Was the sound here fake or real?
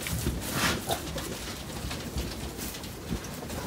real